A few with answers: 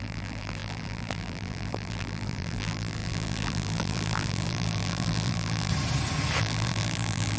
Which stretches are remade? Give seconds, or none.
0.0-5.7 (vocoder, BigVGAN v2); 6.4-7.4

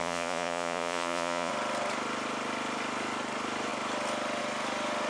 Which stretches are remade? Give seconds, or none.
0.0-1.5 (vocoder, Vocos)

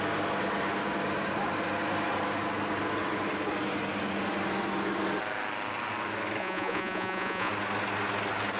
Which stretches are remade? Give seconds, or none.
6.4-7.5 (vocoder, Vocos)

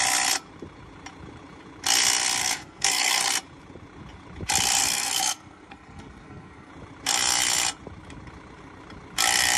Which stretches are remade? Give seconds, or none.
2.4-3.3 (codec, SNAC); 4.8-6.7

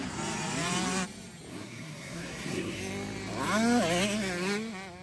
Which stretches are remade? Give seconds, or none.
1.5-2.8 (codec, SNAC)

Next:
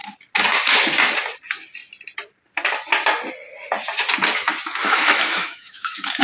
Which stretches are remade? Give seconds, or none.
4.8-6.2 (autoencoder, DAC-VAE)